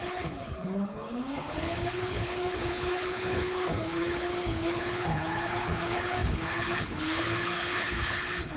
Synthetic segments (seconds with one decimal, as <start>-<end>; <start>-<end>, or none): 0.0-8.6